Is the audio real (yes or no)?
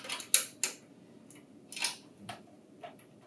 yes